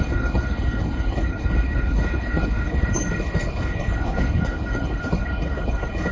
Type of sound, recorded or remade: remade